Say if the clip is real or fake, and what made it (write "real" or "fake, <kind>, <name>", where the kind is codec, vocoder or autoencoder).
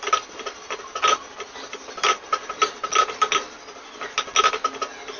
real